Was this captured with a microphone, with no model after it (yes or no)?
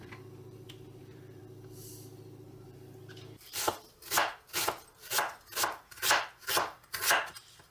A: no